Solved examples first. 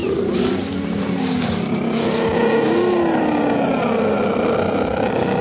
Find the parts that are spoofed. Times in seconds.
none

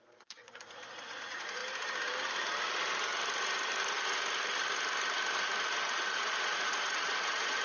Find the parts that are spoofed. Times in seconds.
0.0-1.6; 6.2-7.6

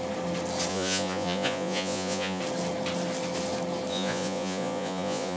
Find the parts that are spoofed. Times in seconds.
0.7-2.4; 3.9-5.4

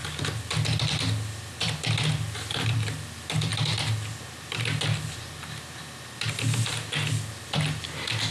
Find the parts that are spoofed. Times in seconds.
none